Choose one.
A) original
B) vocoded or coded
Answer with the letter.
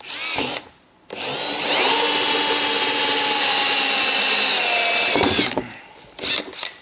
A